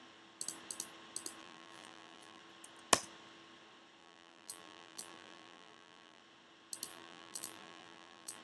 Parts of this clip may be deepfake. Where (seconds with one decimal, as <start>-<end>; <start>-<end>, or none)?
1.4-2.4; 4.0-6.2; 6.9-8.4